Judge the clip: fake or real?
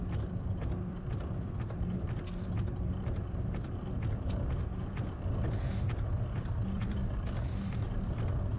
real